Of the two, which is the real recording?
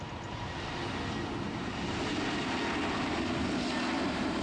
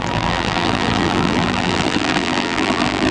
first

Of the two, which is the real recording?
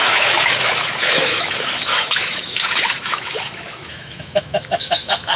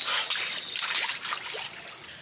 second